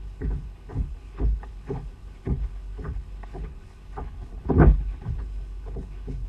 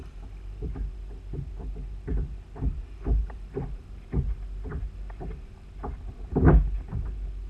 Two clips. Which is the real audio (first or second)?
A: second